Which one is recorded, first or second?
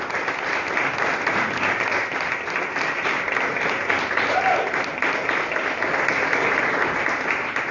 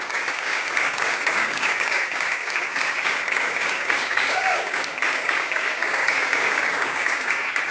first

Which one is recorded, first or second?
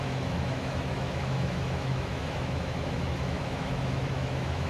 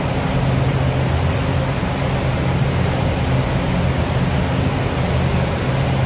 second